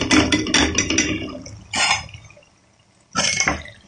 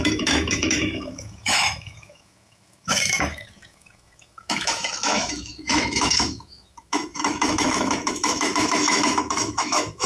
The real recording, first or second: first